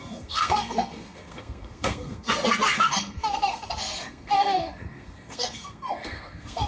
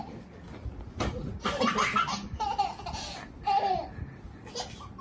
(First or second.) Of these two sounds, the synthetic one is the first